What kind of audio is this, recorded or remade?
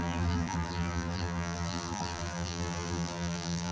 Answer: remade